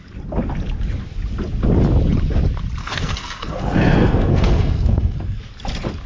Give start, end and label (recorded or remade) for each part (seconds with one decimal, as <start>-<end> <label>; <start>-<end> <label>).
0.0-2.8 recorded; 2.8-5.4 remade; 5.4-6.1 recorded